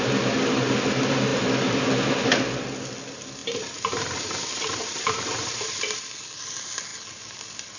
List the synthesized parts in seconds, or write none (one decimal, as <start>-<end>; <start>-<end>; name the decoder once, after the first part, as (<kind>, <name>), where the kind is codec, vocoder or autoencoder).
3.4-6.1 (vocoder, BigVGAN v2)